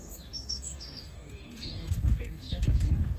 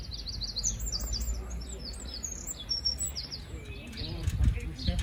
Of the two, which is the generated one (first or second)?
first